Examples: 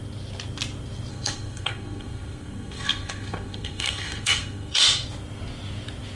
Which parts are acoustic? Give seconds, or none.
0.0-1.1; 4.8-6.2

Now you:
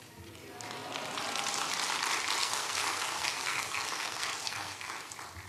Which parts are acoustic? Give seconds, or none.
0.0-2.4; 5.1-5.5

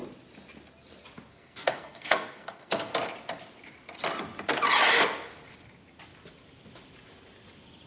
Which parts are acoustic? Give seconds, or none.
0.0-1.3; 2.9-7.9

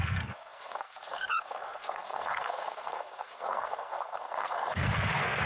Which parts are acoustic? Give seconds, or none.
none

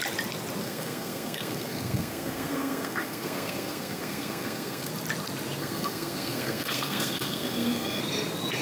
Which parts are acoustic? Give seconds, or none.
0.0-0.6; 4.9-5.6; 8.0-8.6

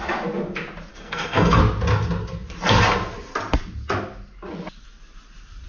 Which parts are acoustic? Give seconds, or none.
0.0-0.9; 1.6-5.7

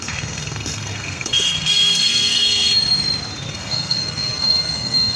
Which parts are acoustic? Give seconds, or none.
2.7-3.5

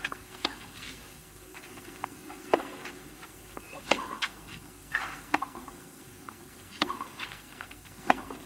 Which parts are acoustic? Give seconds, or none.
none